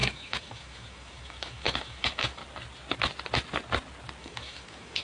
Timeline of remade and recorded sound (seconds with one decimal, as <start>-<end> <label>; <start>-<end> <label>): 0.0-2.4 remade; 2.4-4.2 recorded; 4.2-5.0 remade